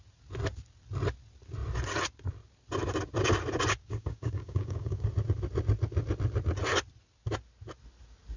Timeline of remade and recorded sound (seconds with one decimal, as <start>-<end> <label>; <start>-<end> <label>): 0.0-3.8 recorded; 3.8-5.1 remade; 5.1-8.4 recorded

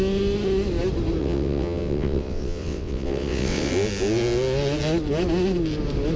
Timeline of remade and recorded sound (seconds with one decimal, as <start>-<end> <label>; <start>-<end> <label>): 0.0-1.2 recorded; 1.2-3.7 remade; 3.7-6.2 recorded

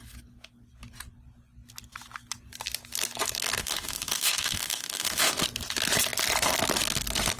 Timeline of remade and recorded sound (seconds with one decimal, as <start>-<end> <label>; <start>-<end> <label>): 0.0-3.6 recorded; 3.6-5.4 remade; 5.4-7.4 recorded

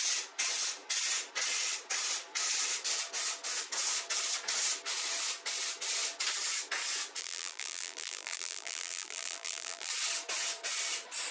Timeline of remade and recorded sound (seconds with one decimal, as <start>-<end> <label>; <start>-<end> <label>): 0.0-7.2 recorded; 7.2-9.9 remade; 9.9-11.3 recorded

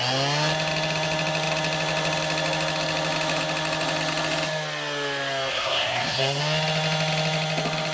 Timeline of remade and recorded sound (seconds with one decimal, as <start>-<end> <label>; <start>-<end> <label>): 0.0-5.5 recorded; 5.5-6.4 remade; 6.4-7.9 recorded